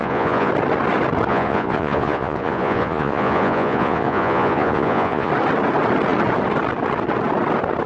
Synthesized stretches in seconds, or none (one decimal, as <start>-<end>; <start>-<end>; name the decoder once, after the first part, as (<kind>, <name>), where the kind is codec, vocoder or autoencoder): 0.0-0.5 (vocoder, Vocos); 1.3-5.3